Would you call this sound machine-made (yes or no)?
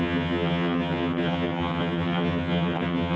yes